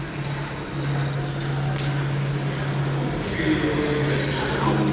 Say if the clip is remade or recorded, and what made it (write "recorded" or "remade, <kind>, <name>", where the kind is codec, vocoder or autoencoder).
recorded